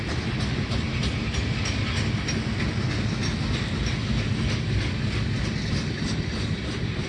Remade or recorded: recorded